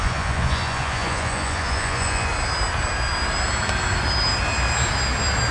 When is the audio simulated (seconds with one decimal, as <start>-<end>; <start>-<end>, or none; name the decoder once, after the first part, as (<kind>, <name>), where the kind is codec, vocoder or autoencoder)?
0.0-2.3 (vocoder, Vocos)